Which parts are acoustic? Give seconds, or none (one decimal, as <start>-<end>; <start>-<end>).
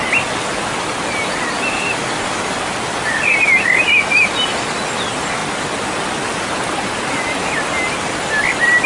0.0-8.9